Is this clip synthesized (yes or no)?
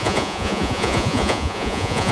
yes